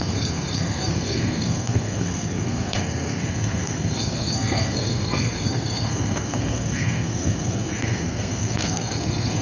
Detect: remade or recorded remade